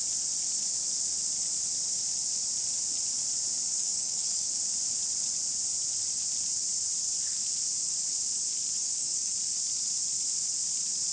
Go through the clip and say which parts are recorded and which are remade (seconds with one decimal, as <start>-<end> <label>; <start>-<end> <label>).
0.0-3.7 recorded; 3.7-4.6 remade; 4.6-8.8 recorded; 8.8-9.3 remade; 9.3-11.1 recorded